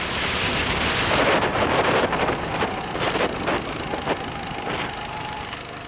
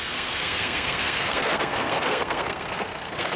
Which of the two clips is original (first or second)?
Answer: first